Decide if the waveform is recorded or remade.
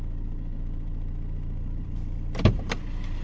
remade